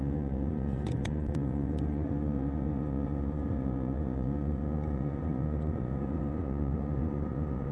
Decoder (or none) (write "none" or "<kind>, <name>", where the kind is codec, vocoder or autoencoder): vocoder, Vocos